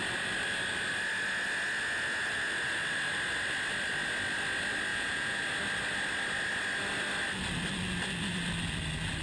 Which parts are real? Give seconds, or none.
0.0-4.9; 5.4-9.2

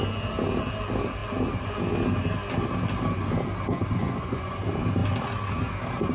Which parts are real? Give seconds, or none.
0.0-4.0; 4.6-6.1

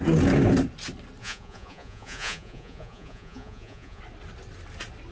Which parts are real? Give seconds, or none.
0.0-1.2; 4.0-5.1

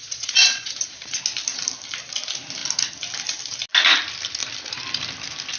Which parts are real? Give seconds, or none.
1.2-5.6

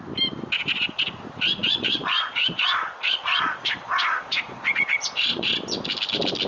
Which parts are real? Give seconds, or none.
0.0-1.6; 5.5-6.5

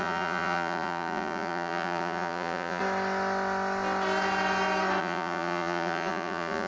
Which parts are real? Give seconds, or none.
2.8-5.0

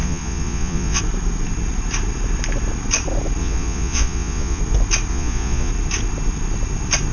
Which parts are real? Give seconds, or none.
1.0-3.4; 4.6-5.1; 5.7-7.1